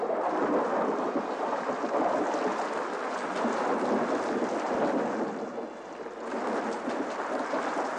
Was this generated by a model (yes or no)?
no